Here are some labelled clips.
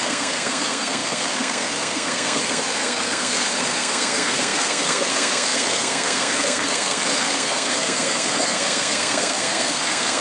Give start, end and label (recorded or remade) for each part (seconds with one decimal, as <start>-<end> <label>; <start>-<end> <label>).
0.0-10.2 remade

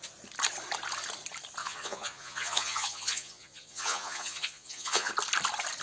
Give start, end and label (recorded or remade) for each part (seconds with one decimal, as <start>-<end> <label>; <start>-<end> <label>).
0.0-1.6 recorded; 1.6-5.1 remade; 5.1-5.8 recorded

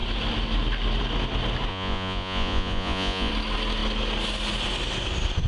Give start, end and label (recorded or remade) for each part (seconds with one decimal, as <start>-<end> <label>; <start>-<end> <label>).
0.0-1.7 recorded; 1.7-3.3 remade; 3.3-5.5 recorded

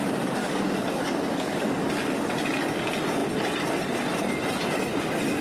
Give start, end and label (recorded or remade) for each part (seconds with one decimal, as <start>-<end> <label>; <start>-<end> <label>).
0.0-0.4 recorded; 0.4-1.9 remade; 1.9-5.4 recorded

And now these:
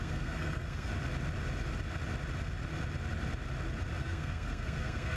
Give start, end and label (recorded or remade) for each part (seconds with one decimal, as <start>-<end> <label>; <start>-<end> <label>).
0.0-0.9 remade; 0.9-4.0 recorded; 4.0-5.2 remade

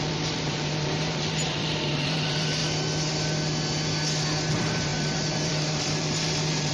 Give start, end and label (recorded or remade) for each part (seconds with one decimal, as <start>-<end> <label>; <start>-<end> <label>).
0.0-2.6 remade; 2.6-4.5 recorded; 4.5-6.7 remade

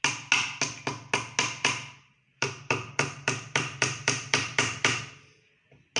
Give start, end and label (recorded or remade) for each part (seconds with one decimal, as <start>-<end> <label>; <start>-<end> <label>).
0.0-1.4 recorded; 1.4-5.0 remade; 5.0-6.0 recorded

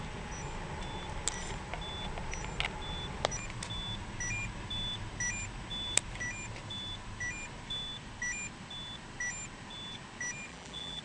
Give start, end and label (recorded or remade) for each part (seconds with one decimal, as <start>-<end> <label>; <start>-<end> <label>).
0.0-10.5 recorded; 10.5-11.0 remade